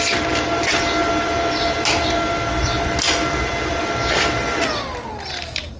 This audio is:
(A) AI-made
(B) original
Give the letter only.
B